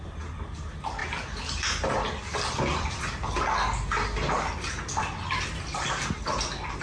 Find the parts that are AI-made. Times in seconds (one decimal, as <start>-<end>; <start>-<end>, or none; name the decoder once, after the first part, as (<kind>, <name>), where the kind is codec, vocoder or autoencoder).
none